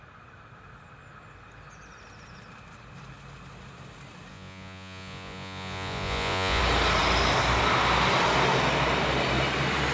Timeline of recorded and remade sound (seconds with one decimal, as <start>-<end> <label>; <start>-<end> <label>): 0.0-4.3 recorded; 4.3-6.6 remade; 6.6-9.9 recorded